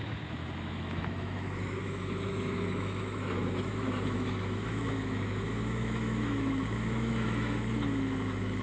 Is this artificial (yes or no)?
yes